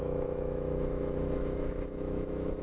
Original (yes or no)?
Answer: no